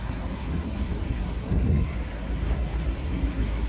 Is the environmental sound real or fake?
fake